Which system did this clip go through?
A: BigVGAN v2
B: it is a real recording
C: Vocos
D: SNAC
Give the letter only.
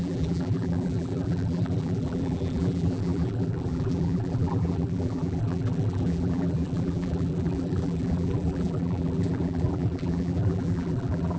A